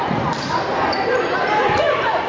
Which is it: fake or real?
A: real